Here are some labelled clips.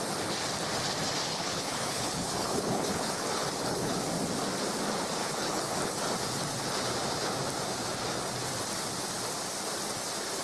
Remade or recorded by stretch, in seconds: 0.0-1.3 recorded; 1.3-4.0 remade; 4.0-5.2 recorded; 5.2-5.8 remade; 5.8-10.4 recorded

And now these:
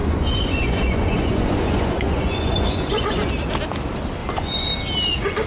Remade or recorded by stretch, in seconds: 0.0-3.3 remade; 3.3-4.2 recorded; 4.2-4.7 remade; 4.7-5.5 recorded

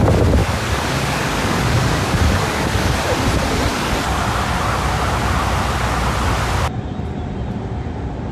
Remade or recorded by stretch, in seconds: 0.0-0.4 recorded; 0.4-2.9 remade; 2.9-3.7 recorded; 3.7-4.2 remade; 4.2-8.3 recorded